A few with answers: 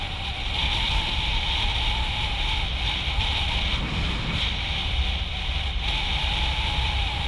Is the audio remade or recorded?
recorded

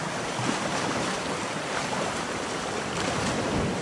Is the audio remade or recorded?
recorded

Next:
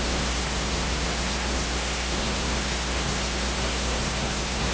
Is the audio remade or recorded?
remade